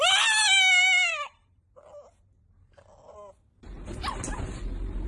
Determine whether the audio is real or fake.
real